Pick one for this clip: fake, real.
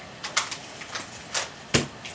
real